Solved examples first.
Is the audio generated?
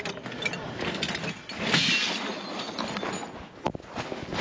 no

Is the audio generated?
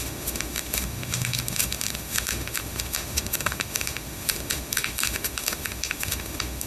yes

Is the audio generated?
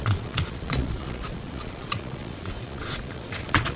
yes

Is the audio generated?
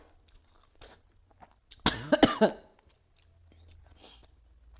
no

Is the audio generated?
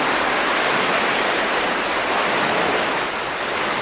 no